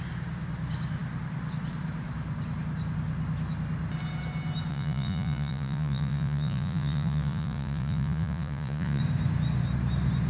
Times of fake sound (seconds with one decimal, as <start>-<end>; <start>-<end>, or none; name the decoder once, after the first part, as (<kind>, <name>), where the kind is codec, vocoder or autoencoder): 4.7-9.0 (vocoder, Vocos)